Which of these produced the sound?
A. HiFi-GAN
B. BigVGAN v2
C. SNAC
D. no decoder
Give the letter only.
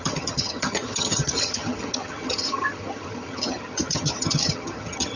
A